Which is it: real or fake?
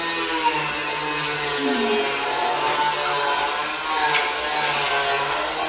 real